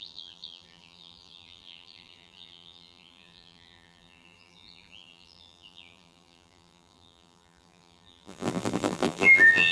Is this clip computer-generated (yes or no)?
yes